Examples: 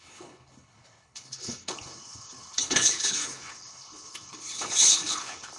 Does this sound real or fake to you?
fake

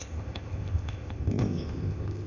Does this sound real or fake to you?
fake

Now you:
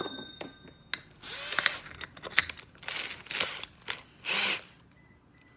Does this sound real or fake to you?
real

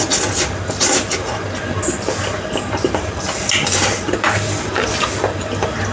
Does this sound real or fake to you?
real